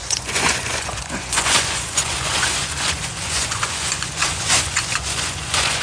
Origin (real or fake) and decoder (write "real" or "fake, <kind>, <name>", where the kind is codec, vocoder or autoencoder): fake, vocoder, Vocos